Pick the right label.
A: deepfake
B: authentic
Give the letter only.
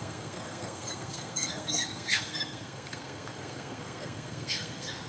A